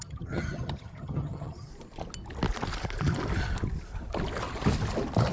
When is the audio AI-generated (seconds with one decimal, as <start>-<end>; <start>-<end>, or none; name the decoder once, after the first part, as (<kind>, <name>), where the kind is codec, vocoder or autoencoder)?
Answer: 0.0-1.7 (vocoder, HiFi-GAN)